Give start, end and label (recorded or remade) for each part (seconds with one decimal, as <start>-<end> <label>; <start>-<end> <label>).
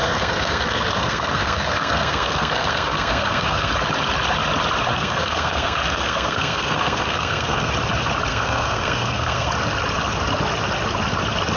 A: 0.0-3.7 remade; 3.7-4.9 recorded; 4.9-7.7 remade; 7.7-8.3 recorded; 8.3-9.5 remade; 9.5-11.6 recorded